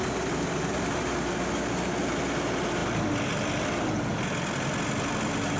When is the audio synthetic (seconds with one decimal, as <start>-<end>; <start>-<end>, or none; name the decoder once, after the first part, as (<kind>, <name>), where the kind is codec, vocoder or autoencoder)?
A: 0.0-0.5 (vocoder, BigVGAN v2); 2.8-3.9